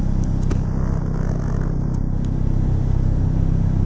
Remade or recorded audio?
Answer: recorded